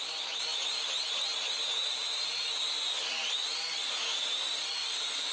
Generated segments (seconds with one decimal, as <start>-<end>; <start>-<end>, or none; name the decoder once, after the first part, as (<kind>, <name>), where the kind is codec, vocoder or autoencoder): none